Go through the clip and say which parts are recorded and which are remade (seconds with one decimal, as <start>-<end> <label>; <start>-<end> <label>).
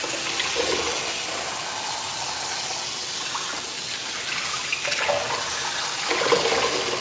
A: 0.0-7.0 recorded